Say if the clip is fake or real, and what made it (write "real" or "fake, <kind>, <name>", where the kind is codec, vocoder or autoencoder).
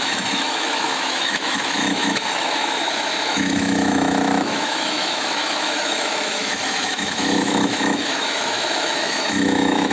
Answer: fake, autoencoder, DAC-VAE